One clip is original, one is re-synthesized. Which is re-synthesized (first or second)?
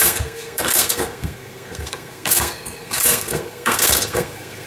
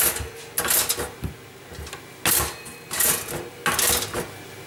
first